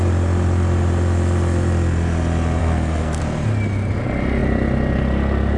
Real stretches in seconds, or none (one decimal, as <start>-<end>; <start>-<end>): 0.0-2.6; 3.2-5.6